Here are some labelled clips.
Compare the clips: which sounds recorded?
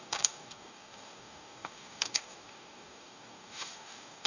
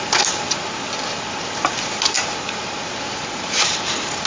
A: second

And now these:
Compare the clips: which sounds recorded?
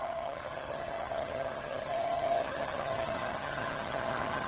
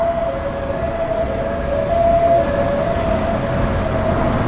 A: second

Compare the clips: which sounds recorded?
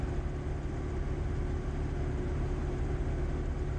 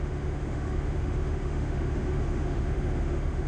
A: first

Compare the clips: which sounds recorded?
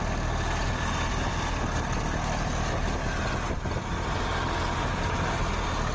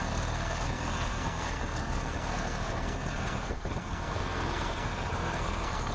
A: first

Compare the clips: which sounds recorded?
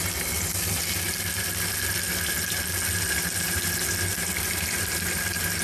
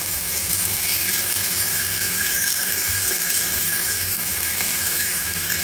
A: first